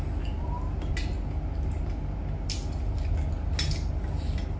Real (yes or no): yes